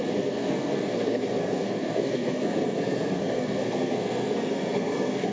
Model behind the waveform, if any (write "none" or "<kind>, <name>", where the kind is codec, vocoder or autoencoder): codec, SNAC